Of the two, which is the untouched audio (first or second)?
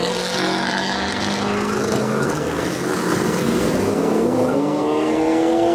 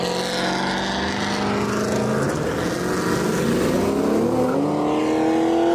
second